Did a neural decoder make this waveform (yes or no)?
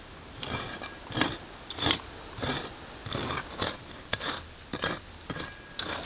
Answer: no